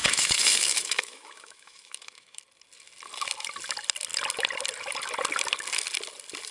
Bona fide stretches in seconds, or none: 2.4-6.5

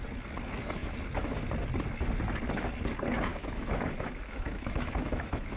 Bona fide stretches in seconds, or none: 0.0-3.3

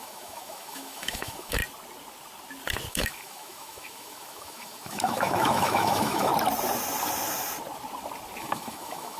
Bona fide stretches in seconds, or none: 1.6-2.9; 6.3-8.4